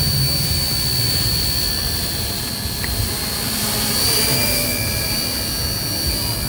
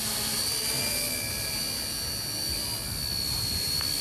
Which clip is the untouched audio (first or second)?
second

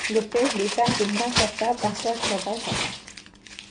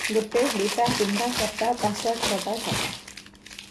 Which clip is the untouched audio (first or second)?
second